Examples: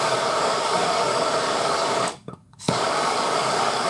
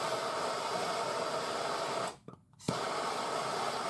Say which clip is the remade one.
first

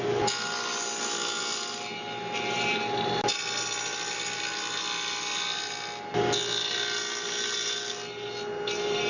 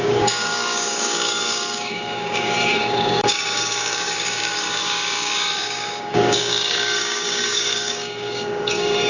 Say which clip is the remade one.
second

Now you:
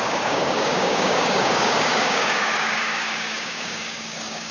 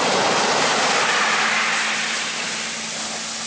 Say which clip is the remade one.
first